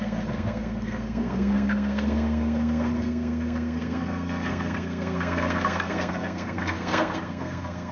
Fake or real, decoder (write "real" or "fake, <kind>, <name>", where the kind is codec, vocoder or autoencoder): fake, codec, SNAC